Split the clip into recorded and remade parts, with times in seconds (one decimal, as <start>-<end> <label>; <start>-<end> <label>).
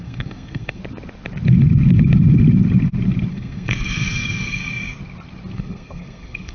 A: 0.0-0.8 remade; 0.8-3.3 recorded; 3.3-4.6 remade; 4.6-5.5 recorded; 5.5-6.5 remade